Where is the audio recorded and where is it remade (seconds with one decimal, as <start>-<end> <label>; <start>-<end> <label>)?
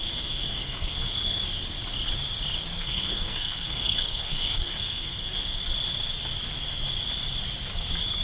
0.0-1.4 remade; 1.4-2.8 recorded; 2.8-5.6 remade; 5.6-8.2 recorded